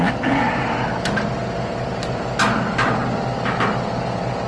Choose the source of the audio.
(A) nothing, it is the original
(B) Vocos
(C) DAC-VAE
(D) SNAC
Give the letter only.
A